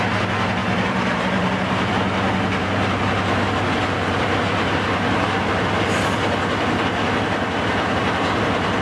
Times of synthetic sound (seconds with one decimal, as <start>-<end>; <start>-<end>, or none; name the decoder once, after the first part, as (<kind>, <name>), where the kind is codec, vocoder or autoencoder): 0.6-1.9 (vocoder, BigVGAN v2); 2.6-5.5